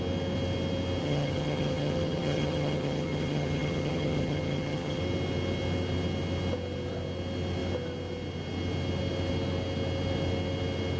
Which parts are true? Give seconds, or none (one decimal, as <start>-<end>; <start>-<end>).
0.0-1.0; 5.0-11.0